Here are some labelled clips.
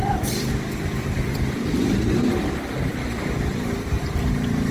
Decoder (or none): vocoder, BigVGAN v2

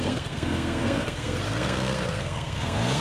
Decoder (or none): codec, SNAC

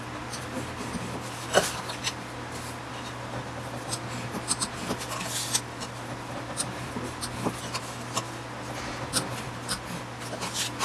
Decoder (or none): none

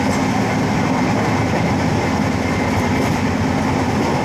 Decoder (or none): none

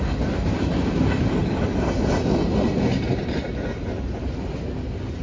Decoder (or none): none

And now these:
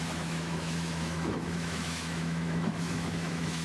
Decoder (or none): autoencoder, DAC-VAE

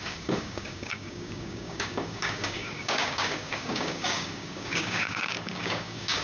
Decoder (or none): codec, DAC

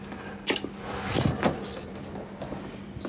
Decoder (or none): none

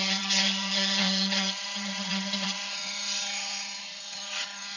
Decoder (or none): vocoder, HiFi-GAN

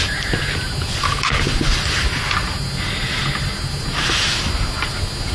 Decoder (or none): none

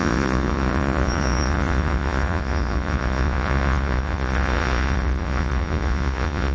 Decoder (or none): vocoder, Vocos